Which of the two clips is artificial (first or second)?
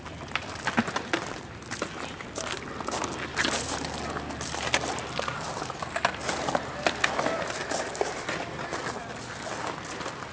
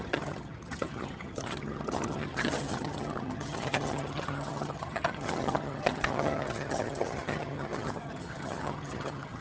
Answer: second